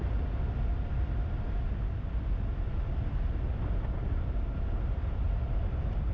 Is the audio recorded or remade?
recorded